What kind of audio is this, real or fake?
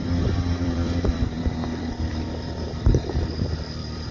fake